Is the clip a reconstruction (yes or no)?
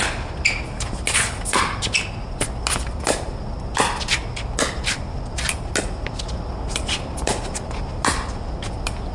no